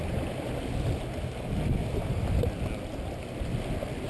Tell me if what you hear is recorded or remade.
recorded